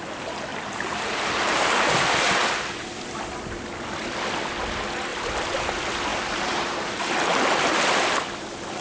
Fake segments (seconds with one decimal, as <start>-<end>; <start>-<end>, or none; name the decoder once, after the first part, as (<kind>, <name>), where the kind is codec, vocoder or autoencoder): 0.5-2.4 (vocoder, BigVGAN v2); 6.1-6.9